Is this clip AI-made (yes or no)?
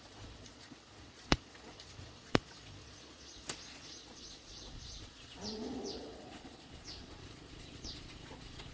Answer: yes